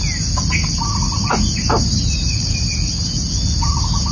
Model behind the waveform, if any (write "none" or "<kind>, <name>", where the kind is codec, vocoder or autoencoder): none